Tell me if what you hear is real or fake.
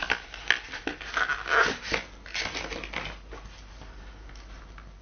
real